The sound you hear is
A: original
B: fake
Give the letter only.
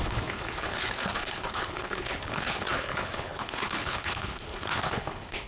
B